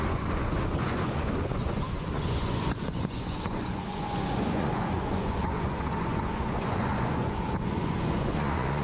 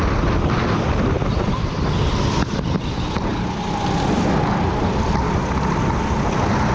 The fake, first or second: first